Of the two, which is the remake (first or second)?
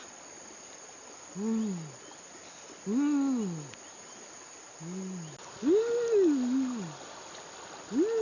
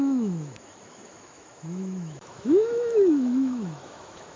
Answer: second